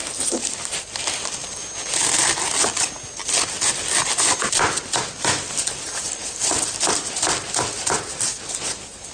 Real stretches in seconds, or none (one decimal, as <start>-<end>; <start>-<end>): 0.0-9.1